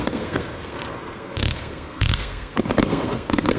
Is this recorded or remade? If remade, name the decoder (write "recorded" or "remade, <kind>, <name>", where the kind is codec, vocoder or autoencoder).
remade, codec, SNAC